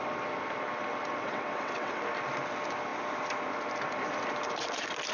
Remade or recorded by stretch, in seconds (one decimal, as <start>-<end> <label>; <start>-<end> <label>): 0.0-1.2 recorded; 1.2-2.0 remade; 2.0-5.1 recorded